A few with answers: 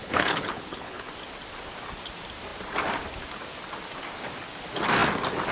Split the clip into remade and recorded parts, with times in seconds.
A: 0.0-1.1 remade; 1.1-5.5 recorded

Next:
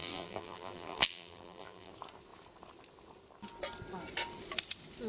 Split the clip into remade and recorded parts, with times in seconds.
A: 0.0-1.9 remade; 1.9-5.1 recorded

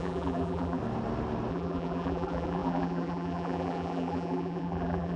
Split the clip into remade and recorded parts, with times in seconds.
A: 0.0-0.8 remade; 0.8-1.5 recorded; 1.5-5.2 remade

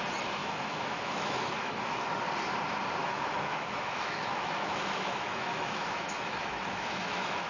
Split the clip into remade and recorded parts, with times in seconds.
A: 0.0-0.4 recorded; 0.4-1.7 remade; 1.7-3.0 recorded; 3.0-7.5 remade